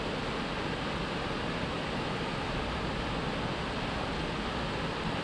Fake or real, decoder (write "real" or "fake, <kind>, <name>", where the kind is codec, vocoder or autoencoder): real